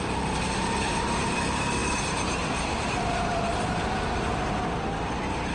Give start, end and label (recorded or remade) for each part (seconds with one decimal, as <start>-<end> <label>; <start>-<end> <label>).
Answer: 0.0-5.5 remade

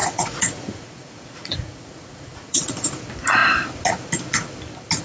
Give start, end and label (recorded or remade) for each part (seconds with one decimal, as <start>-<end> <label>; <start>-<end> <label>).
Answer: 0.0-3.0 remade; 3.0-5.0 recorded